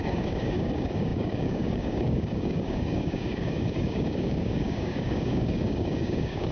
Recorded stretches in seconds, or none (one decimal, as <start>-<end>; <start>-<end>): none